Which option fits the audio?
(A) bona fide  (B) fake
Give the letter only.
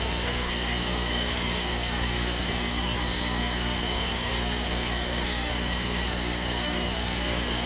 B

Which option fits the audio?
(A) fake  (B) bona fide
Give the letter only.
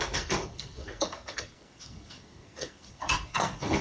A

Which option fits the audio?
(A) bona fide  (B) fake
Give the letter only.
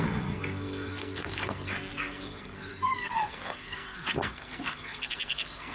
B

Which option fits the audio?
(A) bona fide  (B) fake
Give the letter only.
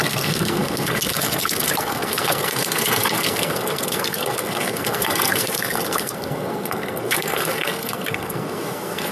B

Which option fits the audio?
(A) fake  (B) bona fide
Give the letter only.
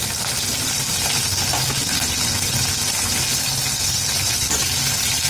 B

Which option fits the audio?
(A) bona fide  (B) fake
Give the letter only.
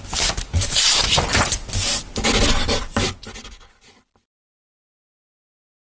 A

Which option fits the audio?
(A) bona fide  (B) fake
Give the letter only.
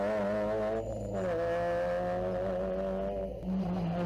A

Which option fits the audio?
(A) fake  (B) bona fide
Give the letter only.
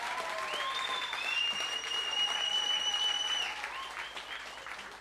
B